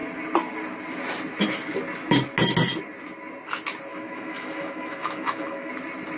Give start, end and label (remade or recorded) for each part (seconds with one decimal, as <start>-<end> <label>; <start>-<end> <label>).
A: 0.0-3.9 recorded; 3.9-5.7 remade; 5.7-6.2 recorded